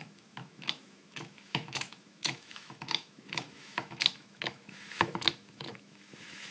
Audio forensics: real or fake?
fake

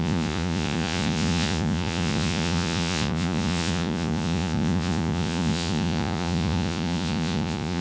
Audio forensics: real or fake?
fake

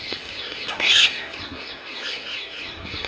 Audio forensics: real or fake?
fake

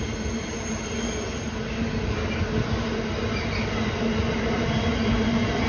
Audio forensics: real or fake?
real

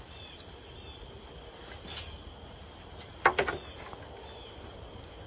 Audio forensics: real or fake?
real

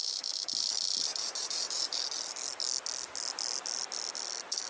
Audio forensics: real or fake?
real